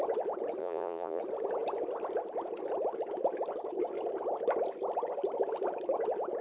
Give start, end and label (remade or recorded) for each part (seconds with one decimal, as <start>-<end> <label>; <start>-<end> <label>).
0.0-0.6 recorded; 0.6-1.2 remade; 1.2-6.4 recorded